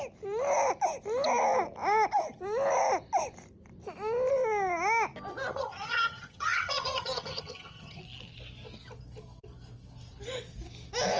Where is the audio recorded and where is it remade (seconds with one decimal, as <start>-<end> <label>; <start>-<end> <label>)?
0.0-5.5 recorded; 5.5-8.0 remade; 8.0-11.2 recorded